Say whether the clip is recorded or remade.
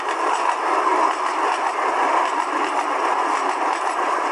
recorded